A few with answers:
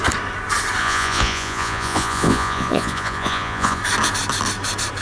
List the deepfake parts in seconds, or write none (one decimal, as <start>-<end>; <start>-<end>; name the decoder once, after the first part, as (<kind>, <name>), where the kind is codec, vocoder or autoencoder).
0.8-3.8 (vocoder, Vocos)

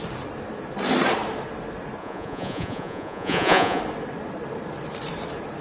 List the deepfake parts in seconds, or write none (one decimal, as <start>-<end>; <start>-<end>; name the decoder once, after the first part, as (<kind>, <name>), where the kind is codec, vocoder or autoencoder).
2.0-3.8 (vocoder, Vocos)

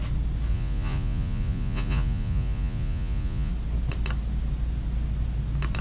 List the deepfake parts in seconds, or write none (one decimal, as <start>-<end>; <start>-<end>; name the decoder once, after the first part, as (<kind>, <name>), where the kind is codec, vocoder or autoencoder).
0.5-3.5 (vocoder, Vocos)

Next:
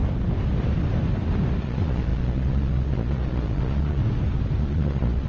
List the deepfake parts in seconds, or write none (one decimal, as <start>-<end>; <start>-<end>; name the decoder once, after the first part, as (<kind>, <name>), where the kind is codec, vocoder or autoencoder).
1.6-4.0 (vocoder, Vocos); 4.6-5.3